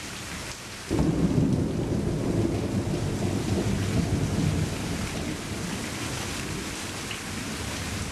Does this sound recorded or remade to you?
recorded